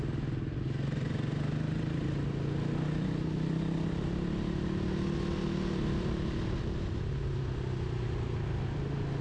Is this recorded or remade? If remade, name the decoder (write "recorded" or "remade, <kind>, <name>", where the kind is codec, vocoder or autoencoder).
recorded